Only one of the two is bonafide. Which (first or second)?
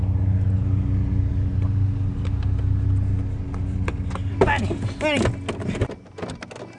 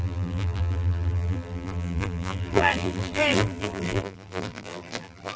first